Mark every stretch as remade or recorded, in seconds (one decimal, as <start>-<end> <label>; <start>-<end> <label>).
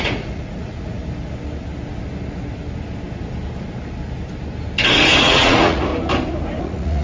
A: 0.0-1.0 remade; 1.0-5.2 recorded; 5.2-5.9 remade; 5.9-6.6 recorded; 6.6-7.0 remade